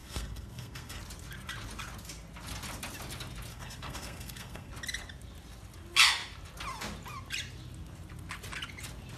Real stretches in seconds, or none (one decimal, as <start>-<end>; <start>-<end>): 1.0-3.5; 4.7-9.2